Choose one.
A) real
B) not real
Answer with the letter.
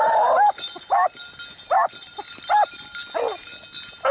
A